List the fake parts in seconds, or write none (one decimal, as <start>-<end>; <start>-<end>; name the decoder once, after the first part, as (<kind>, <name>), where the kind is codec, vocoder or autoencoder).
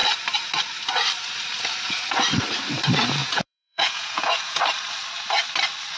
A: 3.2-4.6 (vocoder, Vocos)